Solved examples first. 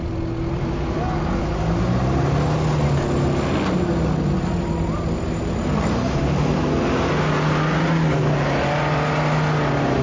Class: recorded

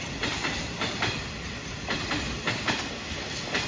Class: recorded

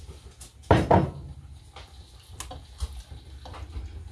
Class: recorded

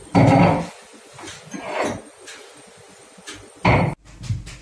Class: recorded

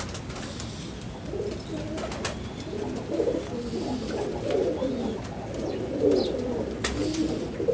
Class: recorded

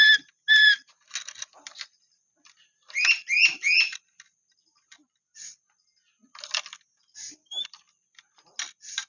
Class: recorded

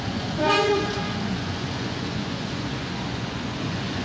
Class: remade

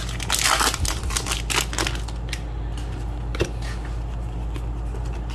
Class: recorded